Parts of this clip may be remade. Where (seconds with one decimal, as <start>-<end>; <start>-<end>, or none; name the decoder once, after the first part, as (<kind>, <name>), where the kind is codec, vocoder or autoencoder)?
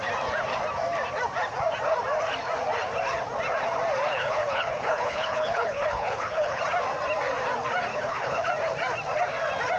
4.1-6.6 (codec, HILCodec); 7.9-8.5